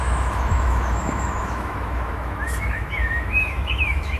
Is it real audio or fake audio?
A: fake